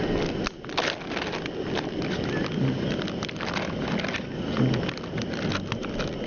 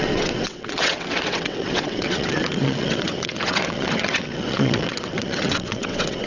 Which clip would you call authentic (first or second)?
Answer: first